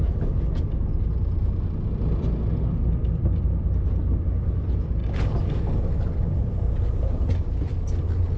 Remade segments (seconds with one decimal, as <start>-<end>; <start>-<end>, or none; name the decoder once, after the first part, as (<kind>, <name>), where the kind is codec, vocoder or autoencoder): 5.0-5.6 (vocoder, BigVGAN v2)